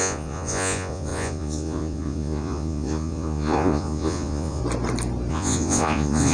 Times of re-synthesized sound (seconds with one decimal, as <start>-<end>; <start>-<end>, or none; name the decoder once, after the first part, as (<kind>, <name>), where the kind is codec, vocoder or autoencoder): 0.0-4.6 (vocoder, Vocos); 5.3-6.3